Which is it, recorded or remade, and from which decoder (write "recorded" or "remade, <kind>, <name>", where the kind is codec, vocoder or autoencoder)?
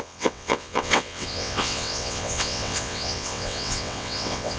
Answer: remade, vocoder, WaveNeXt